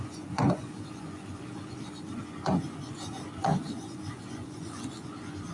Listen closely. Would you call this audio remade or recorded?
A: remade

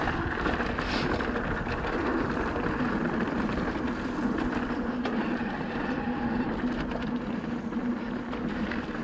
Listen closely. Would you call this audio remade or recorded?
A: recorded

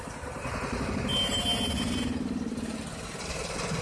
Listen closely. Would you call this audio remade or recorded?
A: recorded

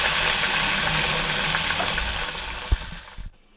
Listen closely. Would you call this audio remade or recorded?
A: recorded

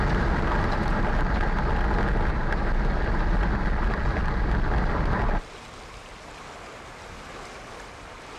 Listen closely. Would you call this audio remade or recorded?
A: recorded